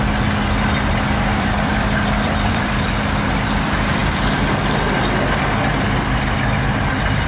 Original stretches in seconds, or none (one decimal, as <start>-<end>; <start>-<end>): 0.0-1.3; 2.9-4.0; 4.6-7.3